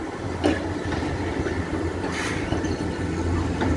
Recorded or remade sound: recorded